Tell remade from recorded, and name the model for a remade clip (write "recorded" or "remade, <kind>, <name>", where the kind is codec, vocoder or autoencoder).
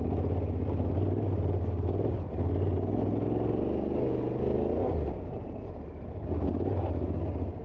recorded